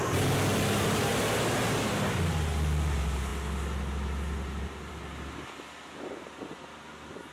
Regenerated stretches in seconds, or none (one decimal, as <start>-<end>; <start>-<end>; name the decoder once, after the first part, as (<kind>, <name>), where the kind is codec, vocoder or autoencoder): none